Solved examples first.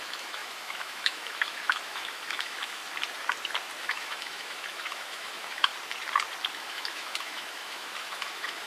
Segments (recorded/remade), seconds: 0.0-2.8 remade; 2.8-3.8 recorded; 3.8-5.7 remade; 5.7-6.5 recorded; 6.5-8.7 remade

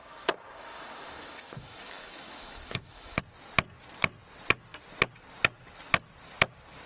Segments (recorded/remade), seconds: 0.0-3.2 remade; 3.2-6.9 recorded

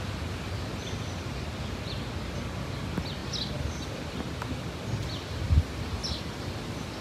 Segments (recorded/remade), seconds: 0.0-7.0 recorded